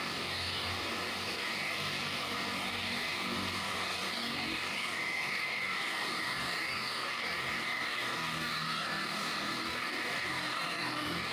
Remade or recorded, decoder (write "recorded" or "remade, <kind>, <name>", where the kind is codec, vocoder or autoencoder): remade, codec, DAC